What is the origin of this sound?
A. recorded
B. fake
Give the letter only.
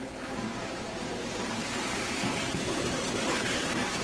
B